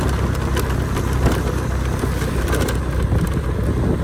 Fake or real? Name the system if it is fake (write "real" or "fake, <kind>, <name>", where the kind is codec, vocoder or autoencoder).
real